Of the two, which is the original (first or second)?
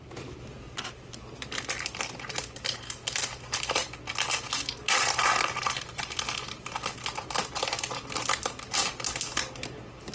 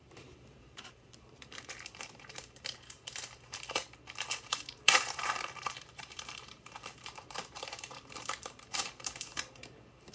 first